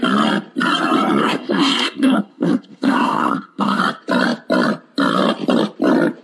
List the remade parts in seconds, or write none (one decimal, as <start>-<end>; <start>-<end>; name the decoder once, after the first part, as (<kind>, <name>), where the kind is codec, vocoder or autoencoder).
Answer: 1.2-3.8 (codec, SNAC)